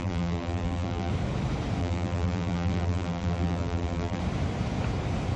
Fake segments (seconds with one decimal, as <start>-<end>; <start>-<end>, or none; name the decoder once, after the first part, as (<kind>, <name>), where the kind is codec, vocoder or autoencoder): 0.0-1.1 (vocoder, BigVGAN v2); 1.8-4.2